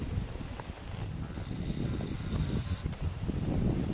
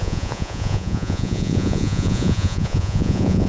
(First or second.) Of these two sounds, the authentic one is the first